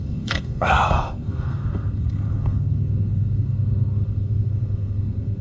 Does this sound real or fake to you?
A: fake